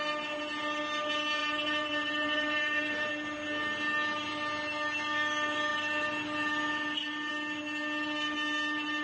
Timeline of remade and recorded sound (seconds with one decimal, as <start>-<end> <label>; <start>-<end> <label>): 0.0-1.4 recorded; 1.4-3.1 remade; 3.1-9.0 recorded